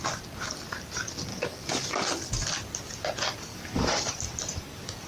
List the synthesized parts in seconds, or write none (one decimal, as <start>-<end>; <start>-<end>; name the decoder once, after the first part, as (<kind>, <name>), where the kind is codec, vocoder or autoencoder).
1.3-1.9 (codec, DAC); 3.5-4.1